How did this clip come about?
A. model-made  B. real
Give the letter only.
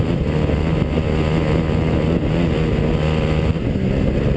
B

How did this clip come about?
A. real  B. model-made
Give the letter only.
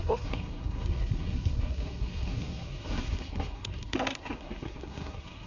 B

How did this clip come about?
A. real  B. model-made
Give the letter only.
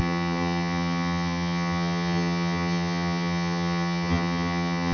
B